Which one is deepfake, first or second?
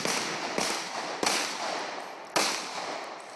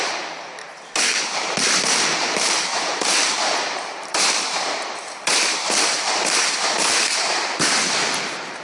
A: second